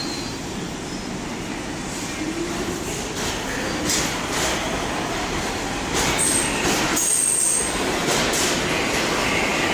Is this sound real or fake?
real